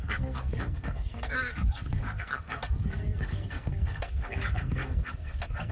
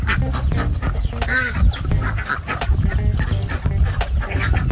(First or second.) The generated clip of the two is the first